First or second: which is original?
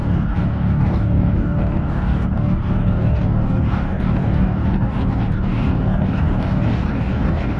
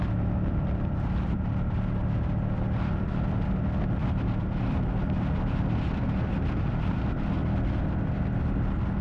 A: second